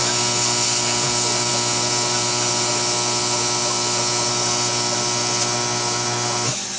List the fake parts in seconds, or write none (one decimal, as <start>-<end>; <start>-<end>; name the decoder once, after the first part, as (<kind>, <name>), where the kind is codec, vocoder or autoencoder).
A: none